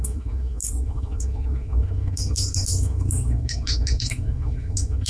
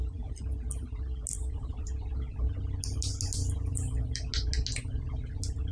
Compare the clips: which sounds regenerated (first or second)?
first